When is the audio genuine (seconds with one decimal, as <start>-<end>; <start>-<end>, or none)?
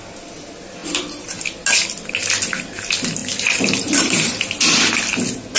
0.0-3.2; 4.4-5.6